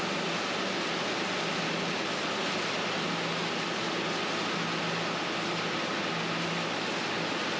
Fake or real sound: real